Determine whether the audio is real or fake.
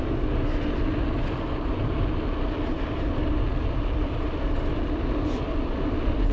real